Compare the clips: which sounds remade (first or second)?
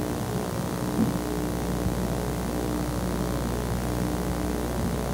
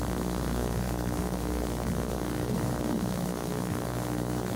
second